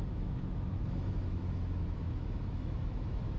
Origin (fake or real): fake